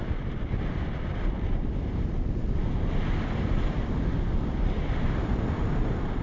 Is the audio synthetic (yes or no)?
no